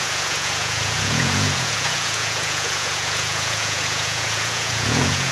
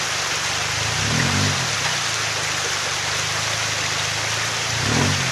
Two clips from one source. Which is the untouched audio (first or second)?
second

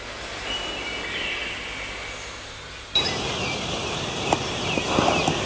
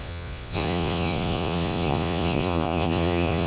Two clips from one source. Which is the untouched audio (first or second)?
first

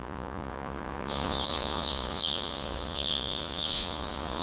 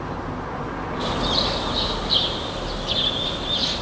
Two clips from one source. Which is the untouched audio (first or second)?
second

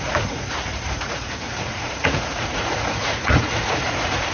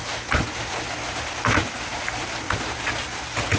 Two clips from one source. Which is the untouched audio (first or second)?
second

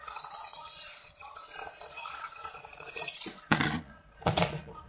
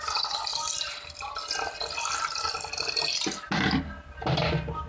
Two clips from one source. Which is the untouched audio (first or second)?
second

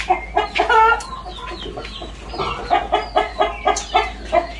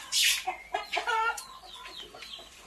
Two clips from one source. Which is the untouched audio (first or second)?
first